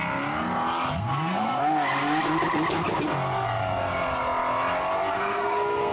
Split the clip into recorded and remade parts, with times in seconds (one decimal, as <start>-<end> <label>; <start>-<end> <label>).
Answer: 0.0-1.0 recorded; 1.0-1.6 remade; 1.6-5.1 recorded; 5.1-5.9 remade